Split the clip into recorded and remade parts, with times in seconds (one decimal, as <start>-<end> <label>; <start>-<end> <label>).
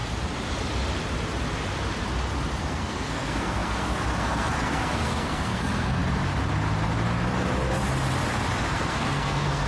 0.0-2.6 recorded; 2.6-6.0 remade; 6.0-8.7 recorded; 8.7-9.7 remade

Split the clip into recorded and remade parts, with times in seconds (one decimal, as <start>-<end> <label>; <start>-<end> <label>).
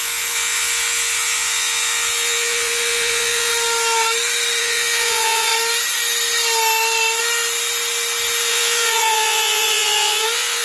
0.0-3.5 remade; 3.5-4.6 recorded; 4.6-5.5 remade; 5.5-8.5 recorded; 8.5-10.6 remade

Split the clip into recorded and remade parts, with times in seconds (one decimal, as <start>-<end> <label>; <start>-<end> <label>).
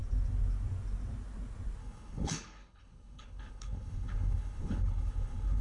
0.0-1.8 recorded; 1.8-5.6 remade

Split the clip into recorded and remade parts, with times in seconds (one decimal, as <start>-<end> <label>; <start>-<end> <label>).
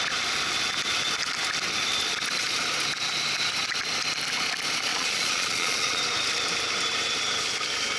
0.0-4.9 recorded; 4.9-6.0 remade; 6.0-8.0 recorded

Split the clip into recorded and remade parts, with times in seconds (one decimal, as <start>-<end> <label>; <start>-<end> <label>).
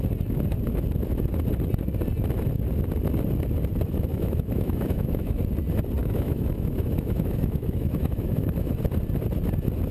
0.0-4.1 recorded; 4.1-5.4 remade; 5.4-6.0 recorded; 6.0-8.7 remade; 8.7-9.9 recorded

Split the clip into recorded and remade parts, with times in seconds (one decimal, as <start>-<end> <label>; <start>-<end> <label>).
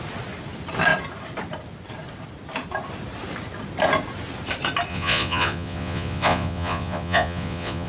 0.0-4.9 recorded; 4.9-7.9 remade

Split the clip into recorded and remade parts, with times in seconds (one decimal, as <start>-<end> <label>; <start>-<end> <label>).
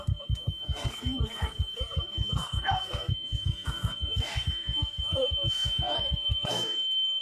0.0-7.2 remade